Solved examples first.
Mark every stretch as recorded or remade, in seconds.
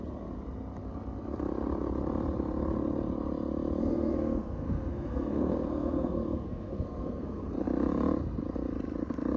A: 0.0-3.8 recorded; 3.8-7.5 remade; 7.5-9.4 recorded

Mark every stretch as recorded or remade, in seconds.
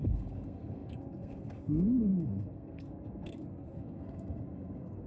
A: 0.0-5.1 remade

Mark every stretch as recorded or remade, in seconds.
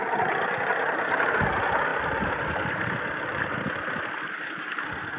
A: 0.0-5.2 recorded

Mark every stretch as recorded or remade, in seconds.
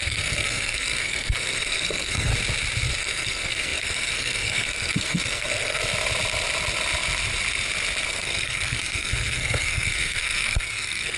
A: 0.0-2.3 remade; 2.3-3.0 recorded; 3.0-5.8 remade; 5.8-8.1 recorded; 8.1-11.2 remade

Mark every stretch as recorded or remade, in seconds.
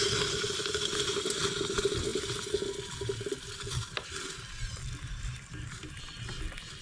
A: 0.0-6.8 recorded